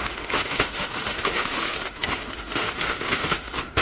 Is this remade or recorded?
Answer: remade